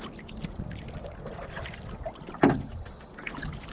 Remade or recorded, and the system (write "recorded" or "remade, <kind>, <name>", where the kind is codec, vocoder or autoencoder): recorded